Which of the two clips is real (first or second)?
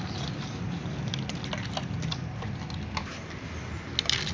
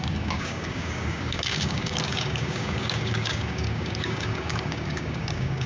first